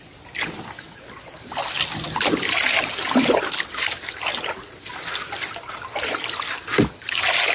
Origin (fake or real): real